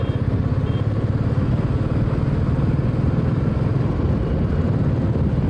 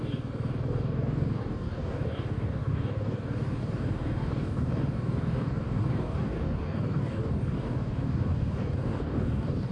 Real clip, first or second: first